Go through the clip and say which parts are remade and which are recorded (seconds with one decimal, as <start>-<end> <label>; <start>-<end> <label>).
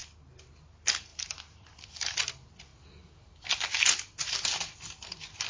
0.0-5.5 recorded